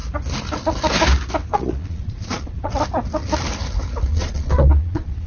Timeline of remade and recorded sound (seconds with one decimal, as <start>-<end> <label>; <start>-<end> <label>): 0.0-1.5 recorded; 1.5-2.7 remade; 2.7-4.1 recorded; 4.1-5.3 remade